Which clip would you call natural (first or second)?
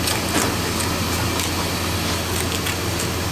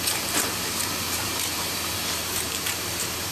first